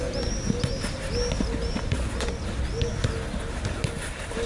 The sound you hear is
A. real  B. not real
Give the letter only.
A